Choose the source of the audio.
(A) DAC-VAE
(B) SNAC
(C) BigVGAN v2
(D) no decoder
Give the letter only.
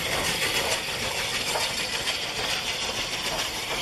D